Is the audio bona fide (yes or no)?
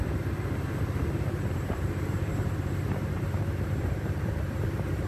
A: no